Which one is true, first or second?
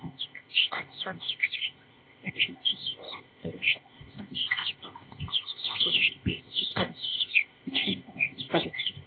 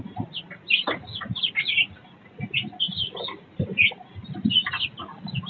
second